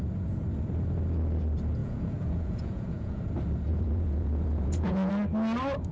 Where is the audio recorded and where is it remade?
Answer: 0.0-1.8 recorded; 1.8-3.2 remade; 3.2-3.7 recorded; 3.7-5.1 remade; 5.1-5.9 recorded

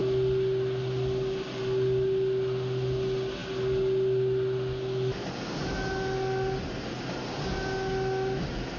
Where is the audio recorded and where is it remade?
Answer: 0.0-8.8 recorded